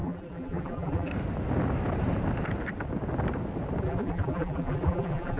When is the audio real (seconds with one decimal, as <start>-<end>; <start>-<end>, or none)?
1.1-3.8